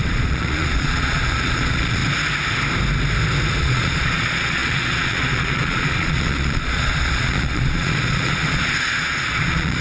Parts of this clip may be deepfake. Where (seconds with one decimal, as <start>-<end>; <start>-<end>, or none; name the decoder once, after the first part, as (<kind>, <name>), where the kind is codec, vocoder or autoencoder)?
0.0-2.0 (vocoder, Vocos); 3.6-9.8